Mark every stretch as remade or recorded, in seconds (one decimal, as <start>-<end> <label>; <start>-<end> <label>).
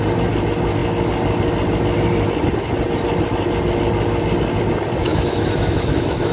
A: 0.0-5.1 recorded; 5.1-6.3 remade